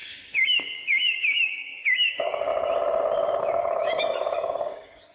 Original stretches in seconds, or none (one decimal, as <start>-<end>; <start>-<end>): 2.5-3.4